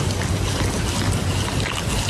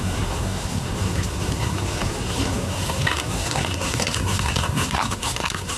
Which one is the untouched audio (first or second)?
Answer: first